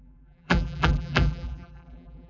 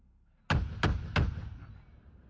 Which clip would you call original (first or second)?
second